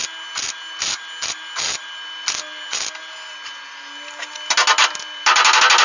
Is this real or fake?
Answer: real